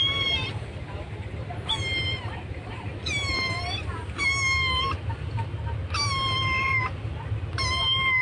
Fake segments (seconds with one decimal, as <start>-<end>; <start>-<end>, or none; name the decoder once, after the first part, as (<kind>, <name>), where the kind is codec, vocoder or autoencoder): 0.0-4.0 (vocoder, BigVGAN v2); 7.4-8.2